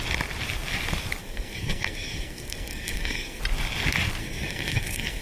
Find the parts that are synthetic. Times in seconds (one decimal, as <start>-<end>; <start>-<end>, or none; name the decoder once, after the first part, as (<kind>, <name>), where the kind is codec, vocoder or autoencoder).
1.2-3.4 (codec, SNAC); 4.2-5.2